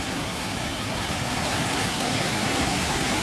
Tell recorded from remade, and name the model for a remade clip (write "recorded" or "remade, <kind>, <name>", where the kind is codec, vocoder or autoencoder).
remade, codec, SNAC